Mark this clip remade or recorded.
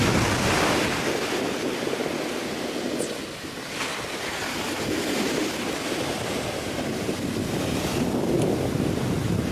recorded